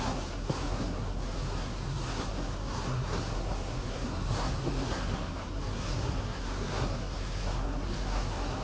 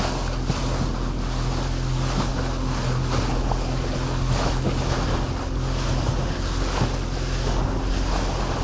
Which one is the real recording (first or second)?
second